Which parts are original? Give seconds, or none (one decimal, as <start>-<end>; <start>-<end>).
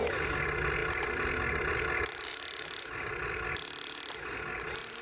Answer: 0.0-5.0